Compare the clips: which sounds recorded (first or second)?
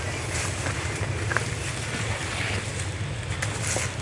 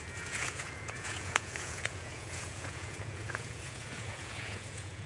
first